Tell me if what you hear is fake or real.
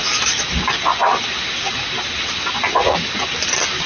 real